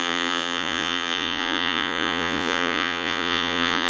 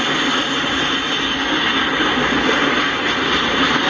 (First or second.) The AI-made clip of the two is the first